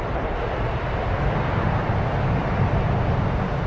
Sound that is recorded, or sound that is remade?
recorded